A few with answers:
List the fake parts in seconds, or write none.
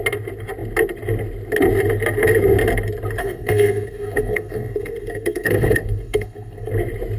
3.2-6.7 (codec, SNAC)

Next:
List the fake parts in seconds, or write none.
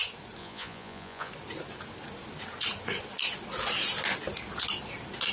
0.4-1.3 (vocoder, Vocos)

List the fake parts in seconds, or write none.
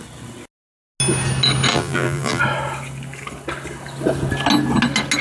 1.7-2.4 (vocoder, BigVGAN v2)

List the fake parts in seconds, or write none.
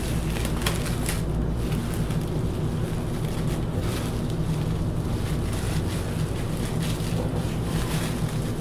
7.3-7.9 (vocoder, BigVGAN v2)